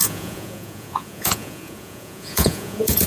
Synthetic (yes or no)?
yes